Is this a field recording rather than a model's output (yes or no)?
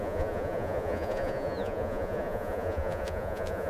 no